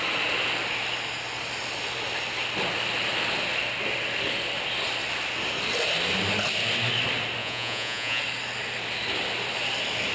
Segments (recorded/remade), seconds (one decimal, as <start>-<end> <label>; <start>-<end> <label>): 0.0-7.4 recorded; 7.4-8.2 remade; 8.2-10.1 recorded